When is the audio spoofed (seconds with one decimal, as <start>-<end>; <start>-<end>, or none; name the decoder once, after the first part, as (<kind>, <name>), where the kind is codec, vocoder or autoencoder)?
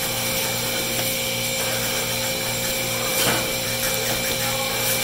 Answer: 3.1-3.7 (vocoder, BigVGAN v2)